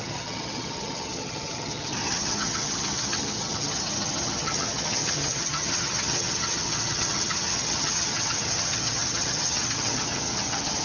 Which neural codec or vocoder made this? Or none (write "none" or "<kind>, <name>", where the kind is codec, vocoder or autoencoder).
vocoder, HiFi-GAN